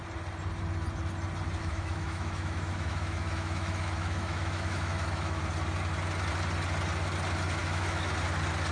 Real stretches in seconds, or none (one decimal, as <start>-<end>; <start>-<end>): 0.0-1.6; 5.4-7.6; 8.1-8.7